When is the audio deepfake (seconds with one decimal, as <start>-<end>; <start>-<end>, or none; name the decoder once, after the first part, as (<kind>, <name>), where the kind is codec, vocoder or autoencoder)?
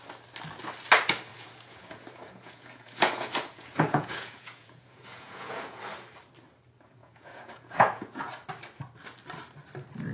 1.3-5.8 (vocoder, Vocos); 7.0-8.3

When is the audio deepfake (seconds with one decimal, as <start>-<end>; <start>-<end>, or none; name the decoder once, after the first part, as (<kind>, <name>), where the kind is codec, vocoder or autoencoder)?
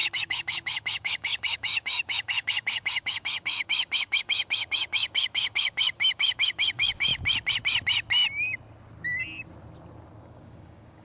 0.0-7.1 (codec, DAC); 10.2-11.0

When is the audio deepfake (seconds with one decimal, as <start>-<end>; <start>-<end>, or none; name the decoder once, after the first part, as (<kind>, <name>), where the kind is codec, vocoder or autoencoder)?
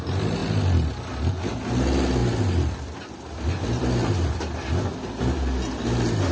none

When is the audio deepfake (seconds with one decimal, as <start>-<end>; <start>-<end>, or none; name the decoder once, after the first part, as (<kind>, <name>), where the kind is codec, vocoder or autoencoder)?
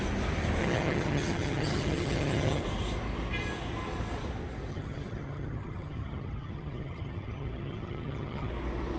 0.6-2.6 (vocoder, HiFi-GAN); 4.7-8.5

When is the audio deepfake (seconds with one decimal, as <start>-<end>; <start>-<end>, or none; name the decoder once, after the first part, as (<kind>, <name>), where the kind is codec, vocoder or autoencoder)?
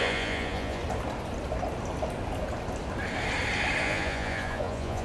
0.0-0.8 (vocoder, Vocos); 3.8-5.0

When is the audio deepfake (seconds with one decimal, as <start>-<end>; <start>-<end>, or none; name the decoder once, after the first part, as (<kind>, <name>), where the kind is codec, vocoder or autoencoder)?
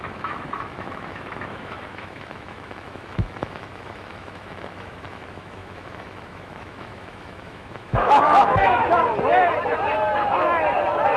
0.0-8.8 (autoencoder, DAC-VAE)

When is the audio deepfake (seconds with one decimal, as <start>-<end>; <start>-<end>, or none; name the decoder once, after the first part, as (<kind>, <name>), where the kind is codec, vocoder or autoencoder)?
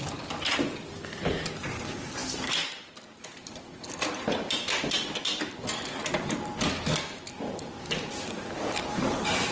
none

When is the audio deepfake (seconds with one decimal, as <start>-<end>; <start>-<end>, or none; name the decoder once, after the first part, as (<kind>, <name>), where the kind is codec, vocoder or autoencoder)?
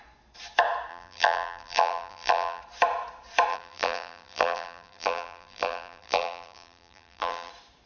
0.9-2.6 (vocoder, BigVGAN v2); 3.5-7.5